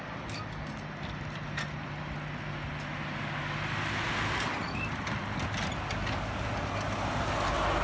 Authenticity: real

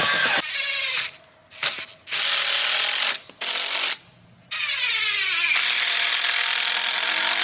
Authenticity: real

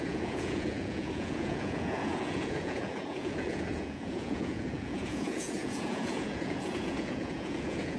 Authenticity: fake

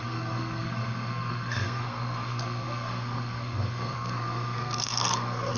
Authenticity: fake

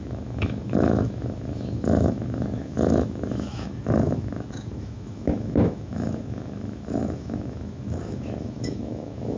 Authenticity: fake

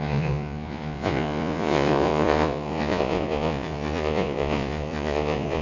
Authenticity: fake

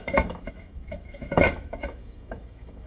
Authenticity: fake